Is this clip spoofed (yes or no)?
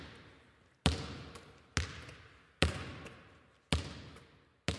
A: no